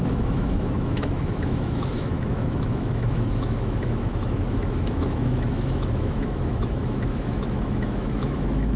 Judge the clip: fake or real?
fake